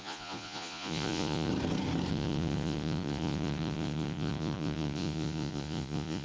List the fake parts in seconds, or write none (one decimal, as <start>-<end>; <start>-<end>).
0.0-1.5; 2.1-6.2